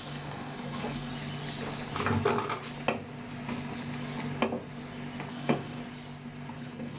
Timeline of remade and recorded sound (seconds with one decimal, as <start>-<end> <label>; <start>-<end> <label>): 0.0-1.1 remade; 1.1-5.3 recorded; 5.3-5.8 remade; 5.8-6.5 recorded; 6.5-7.0 remade